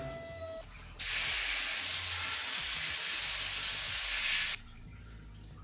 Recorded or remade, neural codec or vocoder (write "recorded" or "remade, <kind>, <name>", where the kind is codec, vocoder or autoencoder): recorded